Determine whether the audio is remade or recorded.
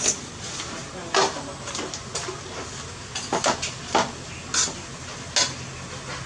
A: recorded